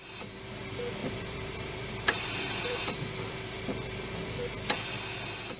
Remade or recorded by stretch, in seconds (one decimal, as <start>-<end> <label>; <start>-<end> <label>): 0.0-1.0 recorded; 1.0-4.4 remade; 4.4-5.6 recorded